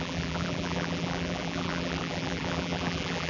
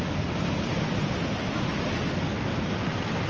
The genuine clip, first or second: second